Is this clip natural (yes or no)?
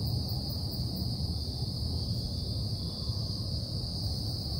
no